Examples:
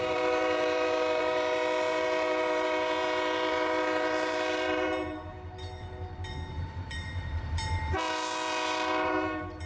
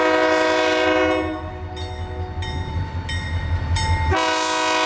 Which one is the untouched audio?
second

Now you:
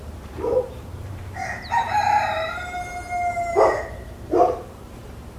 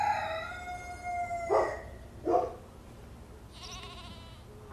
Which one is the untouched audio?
second